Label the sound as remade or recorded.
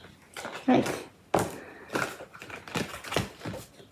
recorded